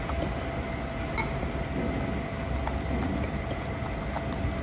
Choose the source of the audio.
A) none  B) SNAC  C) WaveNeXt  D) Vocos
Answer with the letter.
A